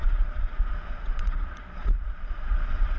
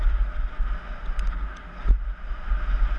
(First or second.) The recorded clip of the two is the second